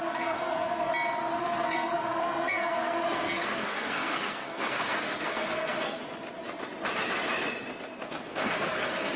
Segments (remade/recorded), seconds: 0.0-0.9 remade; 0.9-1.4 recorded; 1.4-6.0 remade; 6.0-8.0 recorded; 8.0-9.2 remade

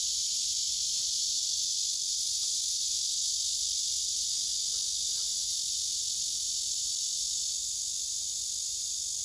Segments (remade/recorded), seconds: 0.0-9.2 recorded

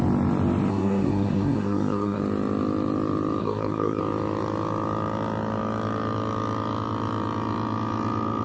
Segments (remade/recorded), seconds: 0.0-0.7 recorded; 0.7-2.2 remade; 2.2-3.4 recorded; 3.4-4.0 remade; 4.0-8.4 recorded

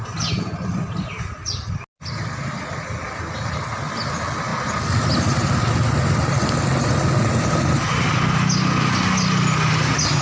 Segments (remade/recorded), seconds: 0.0-10.2 recorded

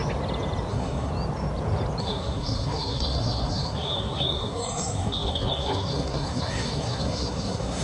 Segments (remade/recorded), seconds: 0.0-0.7 recorded; 0.7-1.1 remade; 1.1-2.0 recorded; 2.0-7.8 remade

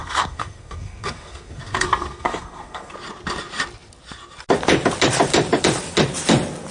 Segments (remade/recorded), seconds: 0.0-2.9 remade; 2.9-6.7 recorded